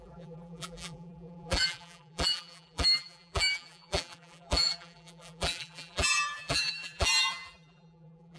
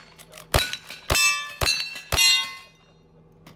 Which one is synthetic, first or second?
first